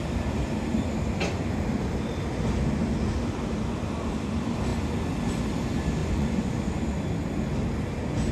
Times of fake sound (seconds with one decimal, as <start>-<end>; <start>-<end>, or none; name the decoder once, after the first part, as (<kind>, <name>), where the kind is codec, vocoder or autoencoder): 6.0-6.5 (vocoder, Vocos)